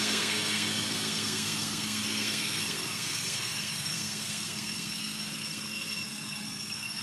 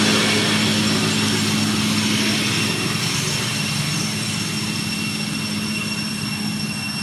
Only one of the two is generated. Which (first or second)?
first